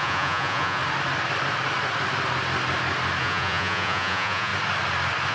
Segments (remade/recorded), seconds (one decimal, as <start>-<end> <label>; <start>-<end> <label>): 0.0-0.8 remade; 0.8-3.2 recorded; 3.2-4.5 remade; 4.5-5.3 recorded